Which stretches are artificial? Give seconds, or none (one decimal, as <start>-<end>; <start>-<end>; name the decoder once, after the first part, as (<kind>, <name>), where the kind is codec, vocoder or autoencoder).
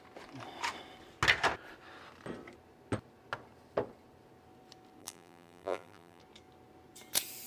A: 5.0-6.2 (vocoder, BigVGAN v2)